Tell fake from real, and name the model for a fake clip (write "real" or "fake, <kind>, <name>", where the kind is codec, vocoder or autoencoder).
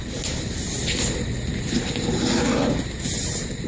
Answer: real